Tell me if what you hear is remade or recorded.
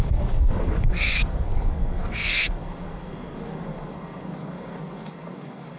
remade